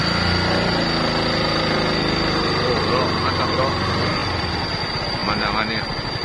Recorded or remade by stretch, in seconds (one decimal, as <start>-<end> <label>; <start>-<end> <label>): 0.0-4.2 recorded; 4.2-4.8 remade; 4.8-6.2 recorded